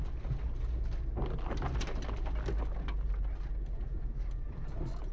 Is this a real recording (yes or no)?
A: yes